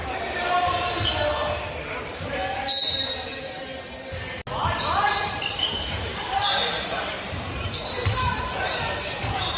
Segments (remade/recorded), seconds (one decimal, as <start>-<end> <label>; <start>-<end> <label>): 0.0-4.6 recorded; 4.6-9.6 remade